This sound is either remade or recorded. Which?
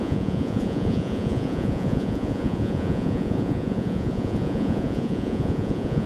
remade